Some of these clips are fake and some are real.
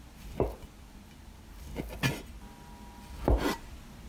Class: real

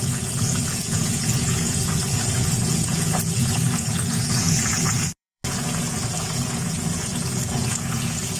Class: fake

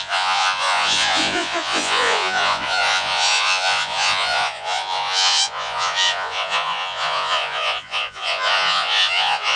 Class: fake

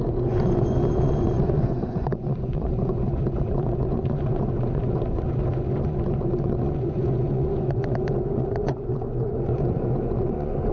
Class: fake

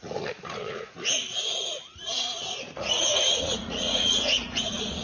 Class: fake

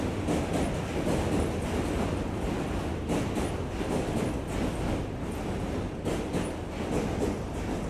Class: real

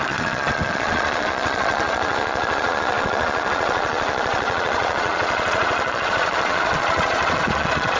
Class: fake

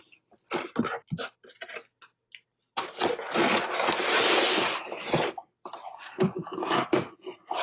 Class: real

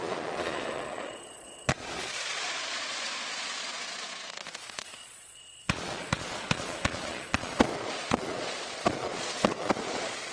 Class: fake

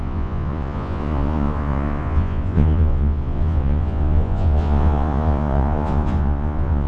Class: fake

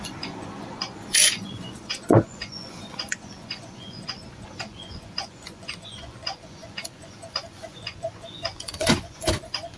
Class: fake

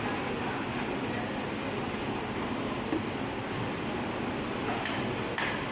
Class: real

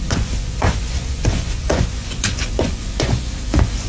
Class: fake